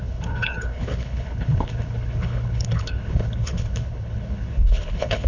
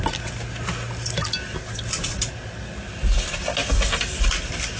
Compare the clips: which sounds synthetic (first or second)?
first